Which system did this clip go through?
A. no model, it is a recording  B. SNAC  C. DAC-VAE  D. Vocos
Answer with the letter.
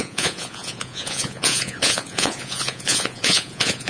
D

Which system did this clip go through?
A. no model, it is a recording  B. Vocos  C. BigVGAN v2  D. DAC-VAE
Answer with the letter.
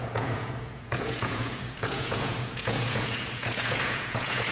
B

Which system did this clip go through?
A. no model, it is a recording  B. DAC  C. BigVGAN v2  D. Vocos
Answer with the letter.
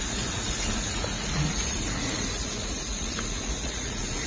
D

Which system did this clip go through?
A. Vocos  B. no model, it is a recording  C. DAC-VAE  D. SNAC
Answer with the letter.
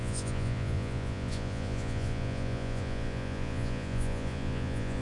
A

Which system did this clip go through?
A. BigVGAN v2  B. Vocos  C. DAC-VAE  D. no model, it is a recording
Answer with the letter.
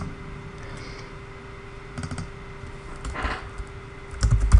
D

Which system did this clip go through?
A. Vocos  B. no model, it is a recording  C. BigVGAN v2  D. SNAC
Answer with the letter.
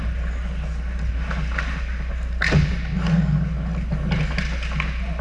B